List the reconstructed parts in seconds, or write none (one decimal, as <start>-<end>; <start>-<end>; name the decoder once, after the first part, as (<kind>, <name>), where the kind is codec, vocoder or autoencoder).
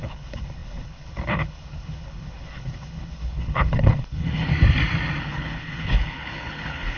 0.0-4.5 (codec, HILCodec); 5.2-7.0